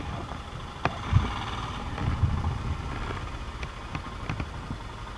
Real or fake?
real